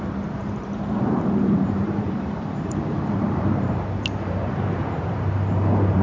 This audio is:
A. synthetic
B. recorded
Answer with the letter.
A